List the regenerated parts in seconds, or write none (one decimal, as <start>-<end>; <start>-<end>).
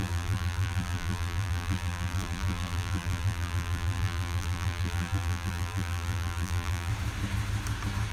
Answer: 0.0-6.9